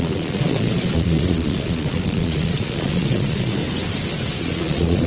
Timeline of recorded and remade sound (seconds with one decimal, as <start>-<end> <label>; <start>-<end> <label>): 0.0-3.6 remade; 3.6-4.4 recorded; 4.4-5.1 remade